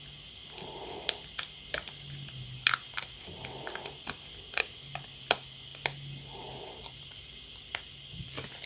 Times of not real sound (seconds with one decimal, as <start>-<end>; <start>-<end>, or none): none